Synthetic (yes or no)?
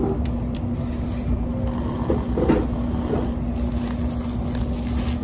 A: no